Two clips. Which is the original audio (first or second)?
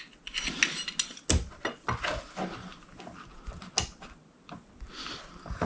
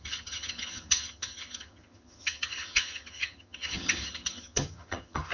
first